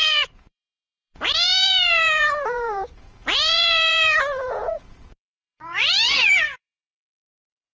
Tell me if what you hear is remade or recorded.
remade